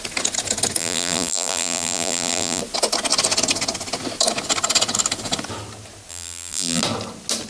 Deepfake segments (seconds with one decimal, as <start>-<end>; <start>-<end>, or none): 0.8-2.6; 6.1-6.8